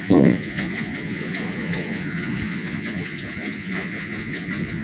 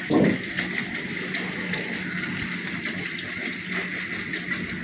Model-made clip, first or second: first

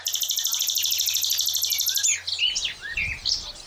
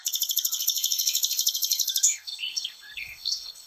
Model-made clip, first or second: second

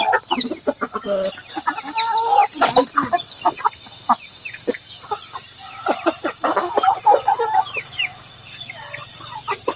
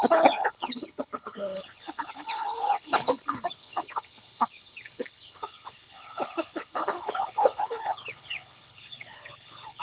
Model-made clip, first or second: second